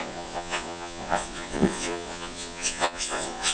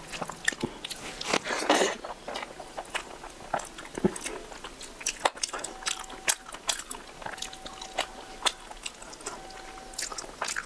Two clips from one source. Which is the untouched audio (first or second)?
second